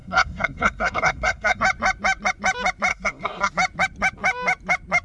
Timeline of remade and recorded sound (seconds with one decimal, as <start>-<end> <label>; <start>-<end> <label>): 0.0-1.6 remade; 1.6-2.9 recorded; 2.9-3.5 remade; 3.5-5.0 recorded